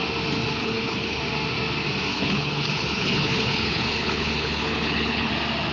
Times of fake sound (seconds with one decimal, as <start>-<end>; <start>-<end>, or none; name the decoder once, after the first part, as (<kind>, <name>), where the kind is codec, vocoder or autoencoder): 0.6-1.2 (codec, HILCodec); 2.1-5.3